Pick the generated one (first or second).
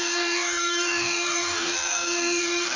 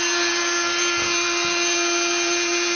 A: first